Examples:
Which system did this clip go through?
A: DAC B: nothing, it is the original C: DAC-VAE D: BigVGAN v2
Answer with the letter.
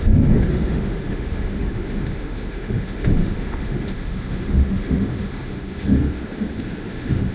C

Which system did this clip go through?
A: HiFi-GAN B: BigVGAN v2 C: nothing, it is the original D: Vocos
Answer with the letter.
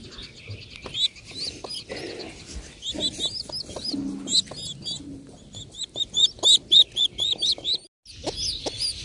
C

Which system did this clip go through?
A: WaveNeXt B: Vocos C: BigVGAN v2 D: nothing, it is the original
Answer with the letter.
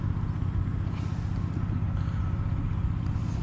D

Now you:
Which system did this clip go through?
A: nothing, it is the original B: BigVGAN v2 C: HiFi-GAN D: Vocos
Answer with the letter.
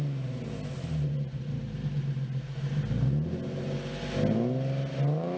A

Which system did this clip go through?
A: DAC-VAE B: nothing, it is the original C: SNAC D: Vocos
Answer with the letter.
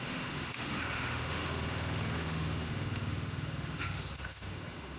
A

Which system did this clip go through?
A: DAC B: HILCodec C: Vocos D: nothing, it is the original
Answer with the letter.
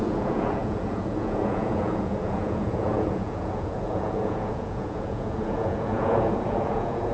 C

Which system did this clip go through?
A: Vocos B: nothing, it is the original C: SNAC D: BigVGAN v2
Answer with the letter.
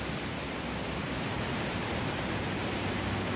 D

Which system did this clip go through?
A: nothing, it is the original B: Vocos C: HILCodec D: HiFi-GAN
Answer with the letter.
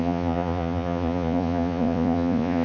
B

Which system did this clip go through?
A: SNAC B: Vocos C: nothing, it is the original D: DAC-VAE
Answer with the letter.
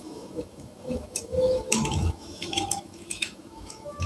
D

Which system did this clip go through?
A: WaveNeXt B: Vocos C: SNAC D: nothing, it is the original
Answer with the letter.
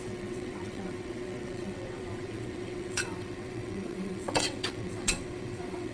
A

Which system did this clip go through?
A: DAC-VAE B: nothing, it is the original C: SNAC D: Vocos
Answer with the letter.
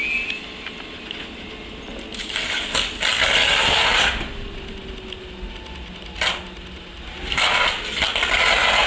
B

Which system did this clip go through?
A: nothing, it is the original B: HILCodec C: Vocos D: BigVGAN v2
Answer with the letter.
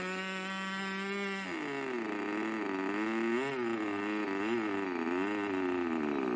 A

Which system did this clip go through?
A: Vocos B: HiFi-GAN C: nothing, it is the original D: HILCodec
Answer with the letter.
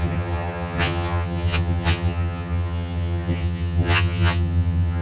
B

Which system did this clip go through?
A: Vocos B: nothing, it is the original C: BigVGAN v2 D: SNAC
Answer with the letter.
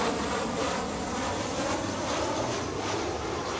B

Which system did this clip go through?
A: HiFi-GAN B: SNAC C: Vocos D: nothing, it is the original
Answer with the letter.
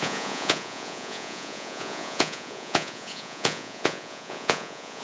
C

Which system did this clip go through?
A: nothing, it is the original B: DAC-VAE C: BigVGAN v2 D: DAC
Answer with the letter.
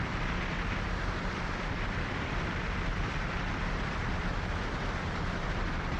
C